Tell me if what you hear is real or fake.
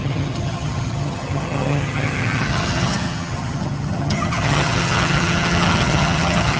fake